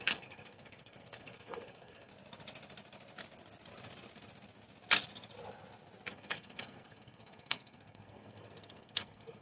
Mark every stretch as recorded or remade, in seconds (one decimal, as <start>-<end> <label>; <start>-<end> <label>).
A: 0.0-2.1 remade; 2.1-6.1 recorded; 6.1-9.4 remade